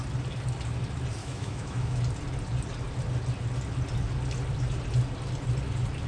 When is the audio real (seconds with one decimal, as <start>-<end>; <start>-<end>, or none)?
0.0-1.2; 2.0-6.1